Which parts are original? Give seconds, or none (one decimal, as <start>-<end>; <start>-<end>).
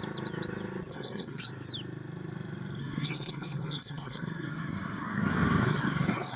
0.0-0.9; 1.5-2.8